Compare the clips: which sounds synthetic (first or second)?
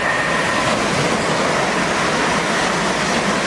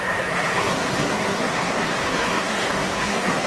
second